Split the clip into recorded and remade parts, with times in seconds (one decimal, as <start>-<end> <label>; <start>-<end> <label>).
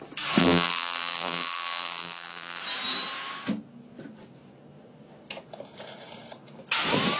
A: 0.0-0.4 recorded; 0.4-2.6 remade; 2.6-7.2 recorded